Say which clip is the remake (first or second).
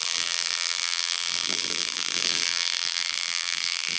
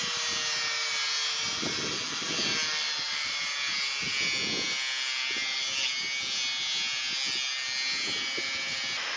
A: first